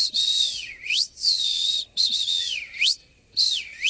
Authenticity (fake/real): fake